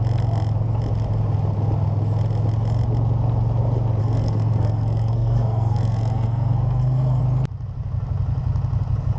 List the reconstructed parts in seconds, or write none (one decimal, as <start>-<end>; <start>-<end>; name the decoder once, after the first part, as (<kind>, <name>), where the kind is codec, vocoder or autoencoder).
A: 4.0-7.2 (codec, SNAC)